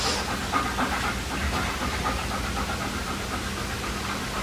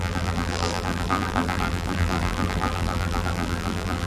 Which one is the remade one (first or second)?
second